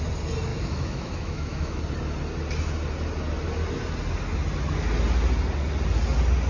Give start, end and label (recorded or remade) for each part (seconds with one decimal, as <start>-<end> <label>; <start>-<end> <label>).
0.0-0.5 recorded; 0.5-1.8 remade; 1.8-6.5 recorded